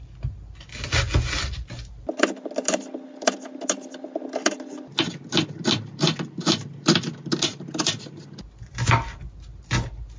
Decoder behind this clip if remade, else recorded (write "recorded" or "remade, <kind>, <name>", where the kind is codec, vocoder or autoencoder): recorded